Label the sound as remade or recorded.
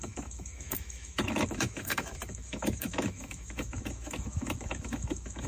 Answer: remade